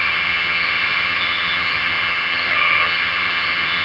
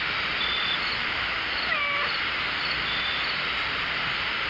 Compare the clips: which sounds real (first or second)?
second